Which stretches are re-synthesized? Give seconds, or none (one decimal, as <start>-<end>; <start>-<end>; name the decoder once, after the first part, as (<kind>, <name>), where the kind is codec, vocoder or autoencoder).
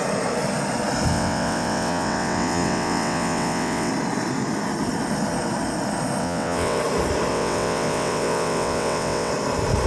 1.1-3.9 (vocoder, WaveNeXt); 6.2-6.8; 7.3-9.3